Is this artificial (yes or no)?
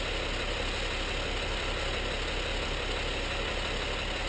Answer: no